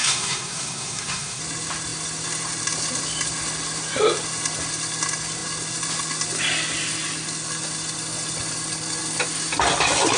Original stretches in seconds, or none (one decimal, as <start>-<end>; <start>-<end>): 1.4-10.2